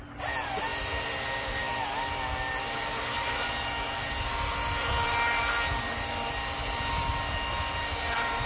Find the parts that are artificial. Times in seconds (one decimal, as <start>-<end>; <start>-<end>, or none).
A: none